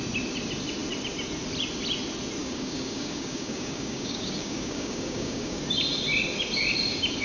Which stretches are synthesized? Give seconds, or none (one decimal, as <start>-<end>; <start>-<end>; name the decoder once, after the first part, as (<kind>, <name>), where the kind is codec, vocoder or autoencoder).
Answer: 2.4-5.6 (codec, DAC)